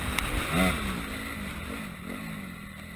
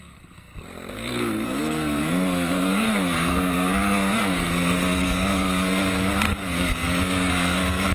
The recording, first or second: first